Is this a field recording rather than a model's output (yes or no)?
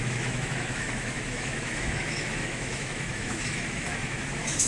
no